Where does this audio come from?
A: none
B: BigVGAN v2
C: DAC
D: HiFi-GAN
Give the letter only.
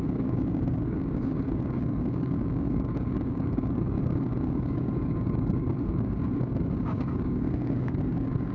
C